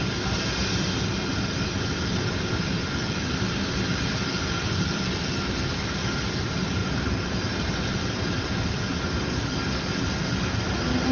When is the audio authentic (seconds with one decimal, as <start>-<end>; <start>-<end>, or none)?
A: 0.0-3.0; 3.5-6.8; 8.3-11.1